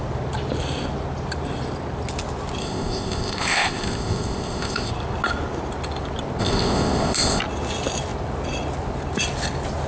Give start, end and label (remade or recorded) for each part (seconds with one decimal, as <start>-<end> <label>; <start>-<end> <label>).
0.0-2.6 recorded; 2.6-4.9 remade; 4.9-6.4 recorded; 6.4-7.4 remade; 7.4-9.9 recorded